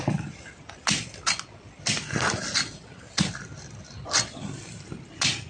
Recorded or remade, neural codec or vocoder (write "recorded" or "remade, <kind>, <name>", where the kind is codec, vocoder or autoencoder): recorded